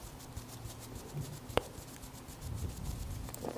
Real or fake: real